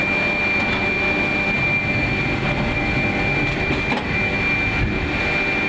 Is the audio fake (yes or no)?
no